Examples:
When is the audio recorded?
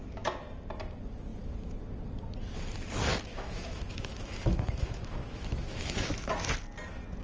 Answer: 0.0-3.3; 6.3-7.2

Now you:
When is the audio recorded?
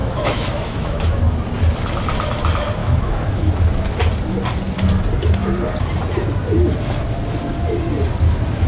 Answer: 1.2-2.8; 3.5-8.7